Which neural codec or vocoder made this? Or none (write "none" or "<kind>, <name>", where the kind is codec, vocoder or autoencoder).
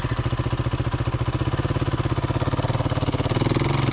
none